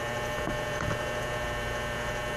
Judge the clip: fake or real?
fake